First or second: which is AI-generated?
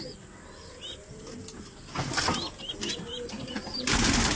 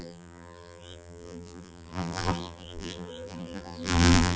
second